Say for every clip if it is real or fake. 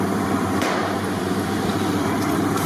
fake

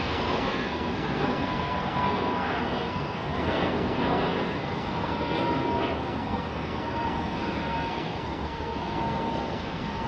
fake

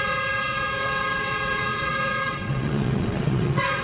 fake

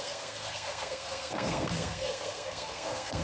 fake